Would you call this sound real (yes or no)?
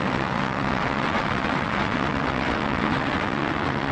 no